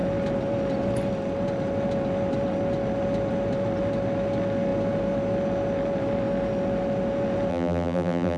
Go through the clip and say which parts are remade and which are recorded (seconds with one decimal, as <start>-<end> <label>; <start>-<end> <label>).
0.0-7.5 recorded; 7.5-8.4 remade